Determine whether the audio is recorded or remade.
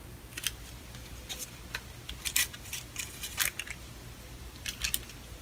recorded